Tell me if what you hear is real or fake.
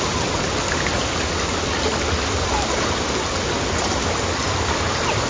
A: real